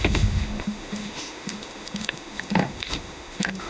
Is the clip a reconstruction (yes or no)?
yes